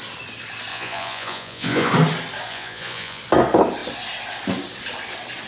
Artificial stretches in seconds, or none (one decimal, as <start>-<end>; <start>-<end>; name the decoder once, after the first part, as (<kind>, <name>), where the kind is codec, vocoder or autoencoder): 0.7-1.9 (vocoder, Vocos); 2.5-3.2